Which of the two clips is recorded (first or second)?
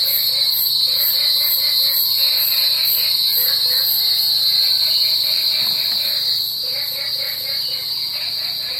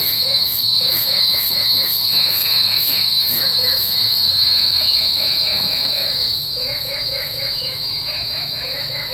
first